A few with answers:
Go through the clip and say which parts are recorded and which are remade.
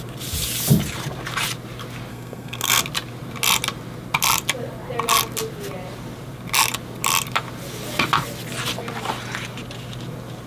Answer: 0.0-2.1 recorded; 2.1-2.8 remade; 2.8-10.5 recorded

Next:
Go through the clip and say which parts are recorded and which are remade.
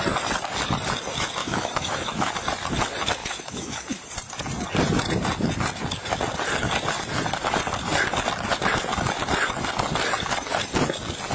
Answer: 0.0-1.4 recorded; 1.4-2.3 remade; 2.3-3.2 recorded; 3.2-4.0 remade; 4.0-11.3 recorded